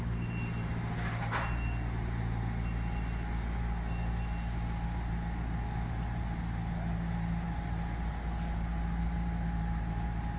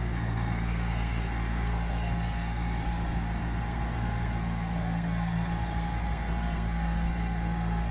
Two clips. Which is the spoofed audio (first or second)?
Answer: second